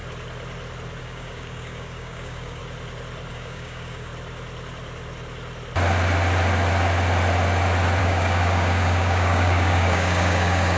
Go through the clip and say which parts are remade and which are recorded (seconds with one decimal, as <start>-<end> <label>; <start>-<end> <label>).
0.0-1.0 recorded; 1.0-2.6 remade; 2.6-3.3 recorded; 3.3-4.1 remade; 4.1-8.0 recorded; 8.0-10.8 remade